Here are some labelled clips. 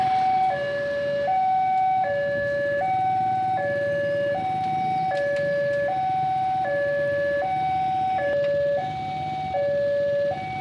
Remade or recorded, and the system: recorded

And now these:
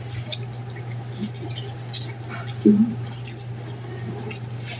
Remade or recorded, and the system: recorded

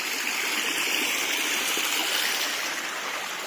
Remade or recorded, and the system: recorded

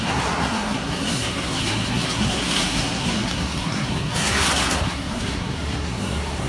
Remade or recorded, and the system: remade, codec, SNAC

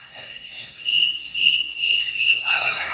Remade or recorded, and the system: remade, codec, SNAC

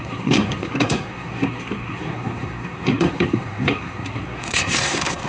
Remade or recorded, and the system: remade, codec, SNAC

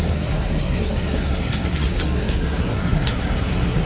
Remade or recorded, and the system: remade, codec, SNAC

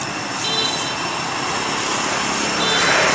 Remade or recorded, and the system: recorded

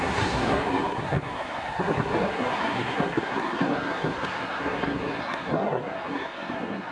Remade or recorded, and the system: remade, codec, SNAC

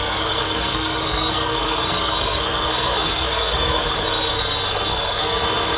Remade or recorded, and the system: remade, codec, SNAC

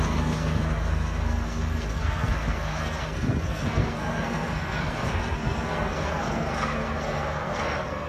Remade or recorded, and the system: remade, codec, SNAC